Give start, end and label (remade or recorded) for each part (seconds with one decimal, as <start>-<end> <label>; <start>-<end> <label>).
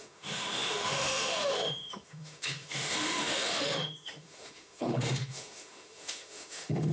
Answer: 0.0-6.9 remade